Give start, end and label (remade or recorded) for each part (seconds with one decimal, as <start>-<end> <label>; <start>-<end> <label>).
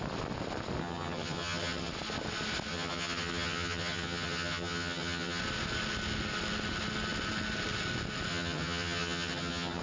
0.0-0.8 recorded; 0.8-1.9 remade; 1.9-2.7 recorded; 2.7-5.4 remade; 5.4-8.3 recorded; 8.3-9.8 remade